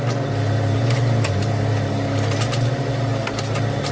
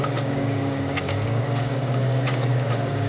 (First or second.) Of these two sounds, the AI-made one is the second